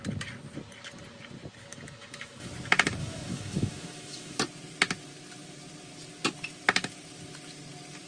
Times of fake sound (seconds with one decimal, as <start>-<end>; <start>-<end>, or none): 1.7-2.5; 3.0-4.4